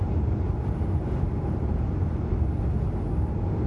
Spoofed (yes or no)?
no